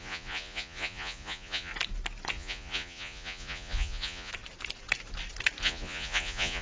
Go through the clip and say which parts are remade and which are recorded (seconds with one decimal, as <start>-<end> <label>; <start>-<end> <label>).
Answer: 0.0-1.7 remade; 1.7-2.3 recorded; 2.3-4.3 remade; 4.3-5.6 recorded; 5.6-6.6 remade